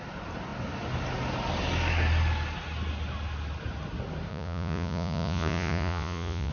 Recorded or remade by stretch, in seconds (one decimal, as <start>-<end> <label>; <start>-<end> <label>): 0.0-4.3 recorded; 4.3-6.5 remade